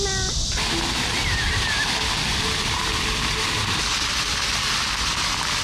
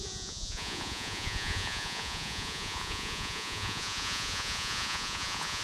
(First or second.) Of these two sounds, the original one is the first